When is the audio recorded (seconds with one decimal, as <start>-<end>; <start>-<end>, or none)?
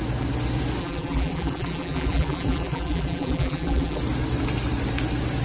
0.0-0.8; 4.0-5.4